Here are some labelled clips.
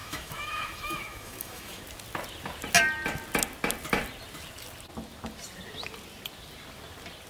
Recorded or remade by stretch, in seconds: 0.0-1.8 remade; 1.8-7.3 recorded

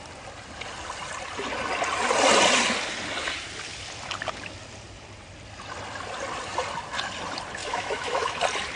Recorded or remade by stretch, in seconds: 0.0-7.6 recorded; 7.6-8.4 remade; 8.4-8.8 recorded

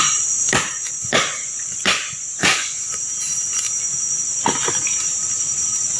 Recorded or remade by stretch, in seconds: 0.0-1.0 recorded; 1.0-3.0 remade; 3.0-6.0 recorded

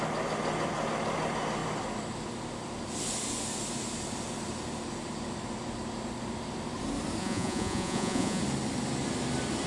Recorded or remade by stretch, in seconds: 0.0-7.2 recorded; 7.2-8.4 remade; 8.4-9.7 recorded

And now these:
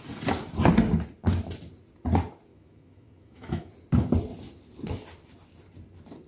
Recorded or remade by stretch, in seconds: 0.0-2.5 recorded; 2.5-3.7 remade; 3.7-6.3 recorded